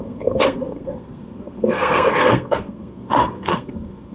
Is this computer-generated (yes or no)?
yes